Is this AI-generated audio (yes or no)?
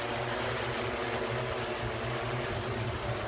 no